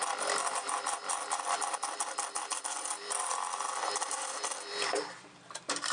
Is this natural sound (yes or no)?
no